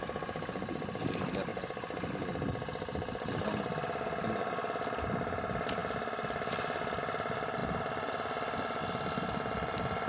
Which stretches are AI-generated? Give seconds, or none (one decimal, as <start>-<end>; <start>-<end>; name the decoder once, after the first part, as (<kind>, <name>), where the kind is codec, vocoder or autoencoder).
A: none